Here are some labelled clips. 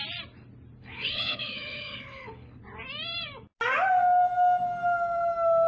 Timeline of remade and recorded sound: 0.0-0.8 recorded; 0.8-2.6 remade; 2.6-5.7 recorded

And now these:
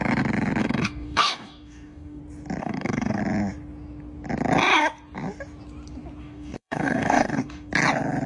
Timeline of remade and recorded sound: 0.0-0.6 recorded; 0.6-2.2 remade; 2.2-2.6 recorded; 2.6-3.2 remade; 3.2-6.2 recorded; 6.2-7.7 remade; 7.7-8.3 recorded